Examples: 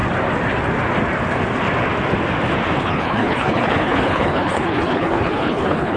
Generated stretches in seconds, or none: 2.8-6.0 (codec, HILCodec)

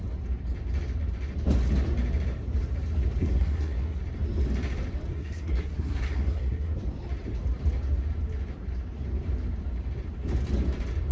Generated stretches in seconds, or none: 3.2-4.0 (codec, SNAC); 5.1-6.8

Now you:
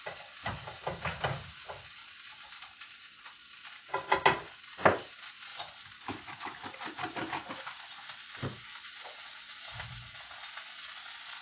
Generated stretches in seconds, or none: none

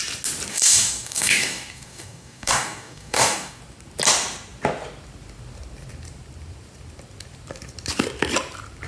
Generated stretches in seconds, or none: 0.5-3.6 (codec, DAC)

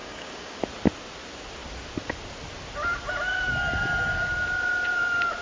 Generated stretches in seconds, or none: 0.0-0.6 (codec, DAC)

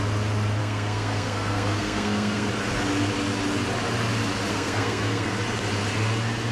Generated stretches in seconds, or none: 0.6-2.5 (codec, SNAC); 4.5-5.3

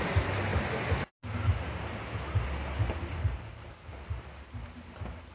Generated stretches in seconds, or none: none

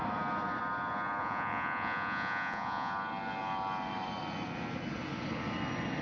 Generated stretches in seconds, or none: 1.2-2.9 (vocoder, Vocos)